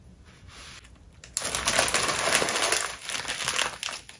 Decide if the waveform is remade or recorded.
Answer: recorded